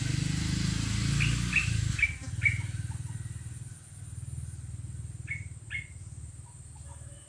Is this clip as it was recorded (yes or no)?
yes